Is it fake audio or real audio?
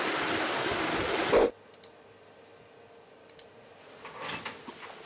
real